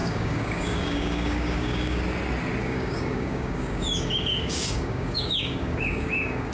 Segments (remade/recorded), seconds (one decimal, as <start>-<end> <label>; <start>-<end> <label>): 0.0-2.0 remade; 2.0-2.6 recorded; 2.6-6.5 remade